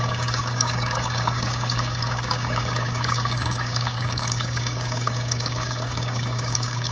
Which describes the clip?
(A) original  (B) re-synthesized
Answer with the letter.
B